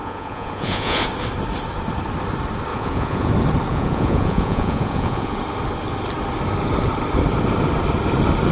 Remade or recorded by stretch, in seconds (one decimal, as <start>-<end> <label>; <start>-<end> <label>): 0.0-1.1 remade; 1.1-2.7 recorded; 2.7-3.3 remade; 3.3-3.7 recorded; 3.7-5.4 remade; 5.4-8.5 recorded